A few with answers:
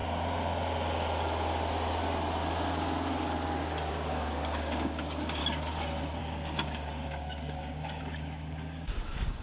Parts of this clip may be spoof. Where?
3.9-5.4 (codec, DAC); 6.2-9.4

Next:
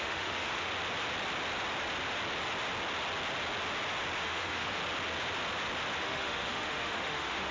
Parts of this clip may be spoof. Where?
0.0-0.7 (autoencoder, DAC-VAE); 4.2-4.8; 6.0-7.5

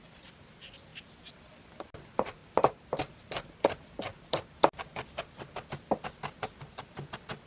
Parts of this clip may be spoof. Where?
none

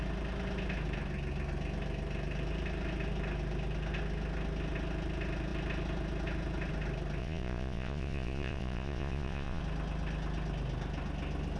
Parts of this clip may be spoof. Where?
7.2-9.6 (vocoder, Vocos)

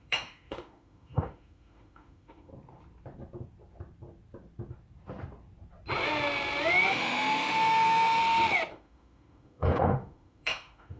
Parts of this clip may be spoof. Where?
0.0-2.5 (autoencoder, DAC-VAE); 6.9-8.2; 8.7-11.0

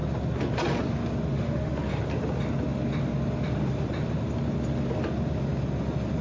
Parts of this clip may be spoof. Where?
1.3-1.8 (autoencoder, DAC-VAE)